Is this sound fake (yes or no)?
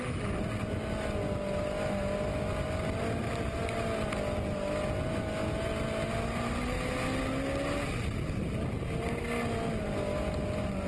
no